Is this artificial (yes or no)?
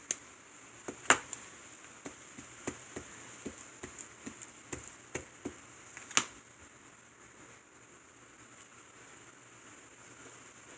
no